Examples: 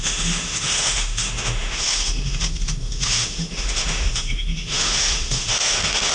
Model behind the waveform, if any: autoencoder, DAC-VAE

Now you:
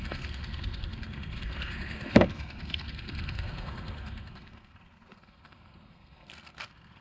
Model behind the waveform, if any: codec, SNAC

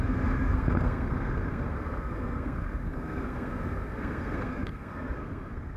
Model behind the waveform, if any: codec, SNAC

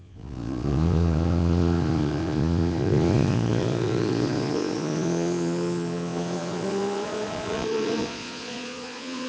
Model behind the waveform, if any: vocoder, Vocos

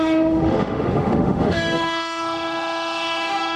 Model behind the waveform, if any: autoencoder, DAC-VAE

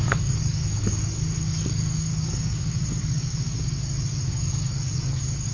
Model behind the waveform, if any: codec, DAC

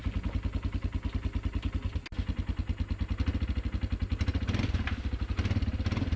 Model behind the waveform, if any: none